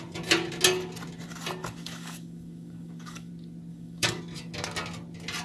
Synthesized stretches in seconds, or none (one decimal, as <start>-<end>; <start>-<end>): 1.6-3.3; 3.7-4.2

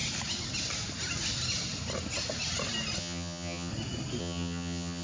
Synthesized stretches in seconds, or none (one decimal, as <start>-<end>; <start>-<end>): 3.0-3.7; 4.2-5.0

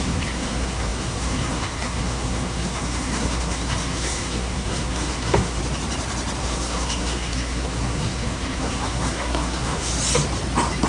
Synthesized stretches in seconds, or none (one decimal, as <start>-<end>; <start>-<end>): 0.0-5.6; 6.4-9.9

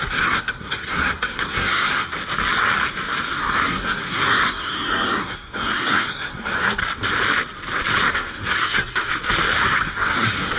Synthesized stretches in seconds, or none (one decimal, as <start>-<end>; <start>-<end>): 0.0-2.1; 3.3-6.8; 8.1-9.1; 9.8-10.6

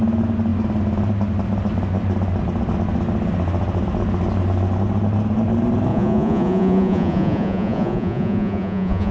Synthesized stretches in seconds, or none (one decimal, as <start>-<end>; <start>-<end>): 5.9-9.1